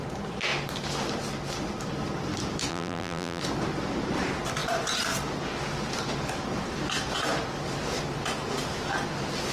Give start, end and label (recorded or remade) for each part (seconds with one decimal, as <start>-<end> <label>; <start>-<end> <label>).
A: 0.0-2.7 recorded; 2.7-3.4 remade; 3.4-9.5 recorded